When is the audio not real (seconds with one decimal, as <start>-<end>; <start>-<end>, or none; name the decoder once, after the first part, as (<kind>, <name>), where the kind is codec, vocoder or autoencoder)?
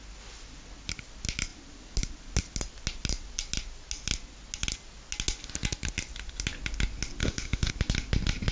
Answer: 7.2-7.7 (autoencoder, DAC-VAE)